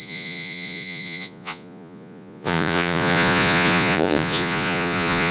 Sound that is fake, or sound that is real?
fake